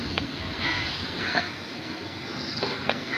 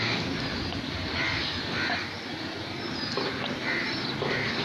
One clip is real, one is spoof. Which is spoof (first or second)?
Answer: first